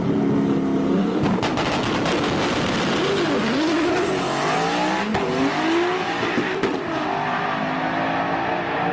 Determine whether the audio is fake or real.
real